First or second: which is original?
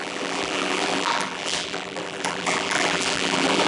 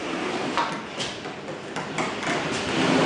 second